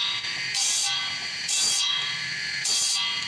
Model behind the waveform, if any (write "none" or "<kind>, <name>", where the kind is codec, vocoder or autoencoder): none